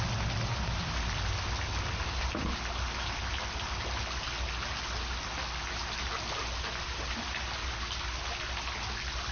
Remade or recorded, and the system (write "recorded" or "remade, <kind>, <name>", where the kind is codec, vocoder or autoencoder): recorded